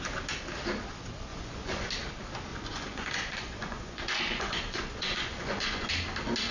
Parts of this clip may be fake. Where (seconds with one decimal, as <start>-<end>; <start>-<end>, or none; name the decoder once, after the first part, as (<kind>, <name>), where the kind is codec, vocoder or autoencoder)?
1.3-1.9 (vocoder, Vocos); 2.5-5.9